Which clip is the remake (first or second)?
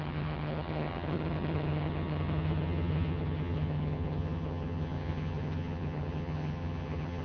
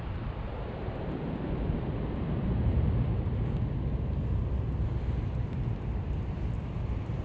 first